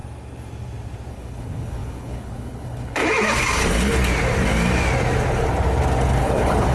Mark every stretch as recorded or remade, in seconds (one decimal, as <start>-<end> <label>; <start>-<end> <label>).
0.0-1.1 recorded; 1.1-3.0 remade; 3.0-6.2 recorded; 6.2-6.7 remade